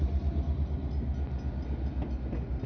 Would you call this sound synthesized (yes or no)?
no